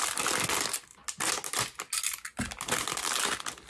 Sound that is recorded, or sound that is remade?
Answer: recorded